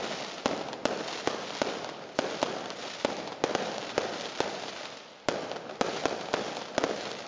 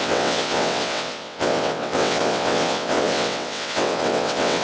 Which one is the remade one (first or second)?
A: second